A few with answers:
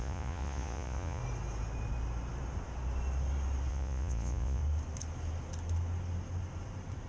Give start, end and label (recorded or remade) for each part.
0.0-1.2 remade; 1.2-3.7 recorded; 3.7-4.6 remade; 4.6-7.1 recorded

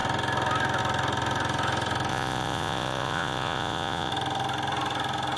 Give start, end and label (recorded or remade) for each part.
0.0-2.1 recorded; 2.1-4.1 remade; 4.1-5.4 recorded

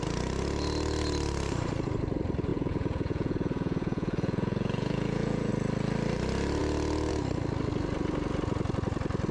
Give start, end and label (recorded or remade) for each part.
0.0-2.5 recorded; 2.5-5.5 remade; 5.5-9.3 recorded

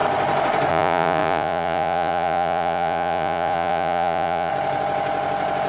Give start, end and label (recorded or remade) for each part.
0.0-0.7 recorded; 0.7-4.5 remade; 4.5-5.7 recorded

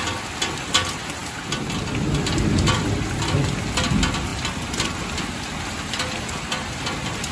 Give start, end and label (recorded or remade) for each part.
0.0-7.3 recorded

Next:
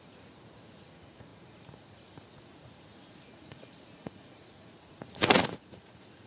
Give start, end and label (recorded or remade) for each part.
0.0-6.3 remade

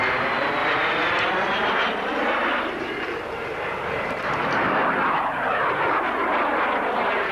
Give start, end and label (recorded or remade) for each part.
0.0-7.3 recorded

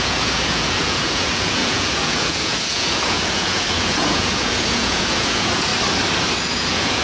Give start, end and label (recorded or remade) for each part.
0.0-5.7 remade; 5.7-6.4 recorded; 6.4-7.0 remade